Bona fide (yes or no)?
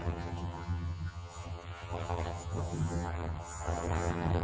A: no